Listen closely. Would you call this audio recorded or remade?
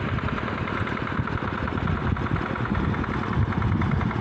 recorded